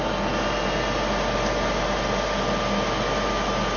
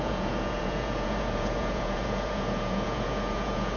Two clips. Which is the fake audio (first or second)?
second